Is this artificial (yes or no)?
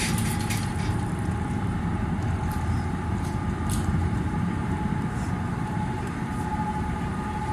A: yes